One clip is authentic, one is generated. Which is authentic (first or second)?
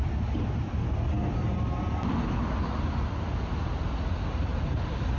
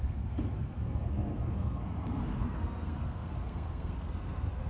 first